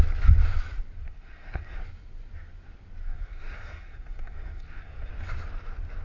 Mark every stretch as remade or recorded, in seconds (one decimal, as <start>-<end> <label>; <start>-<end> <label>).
0.0-1.0 recorded; 1.0-1.8 remade; 1.8-3.0 recorded; 3.0-5.1 remade; 5.1-6.0 recorded